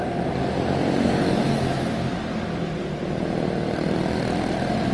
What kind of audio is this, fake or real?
real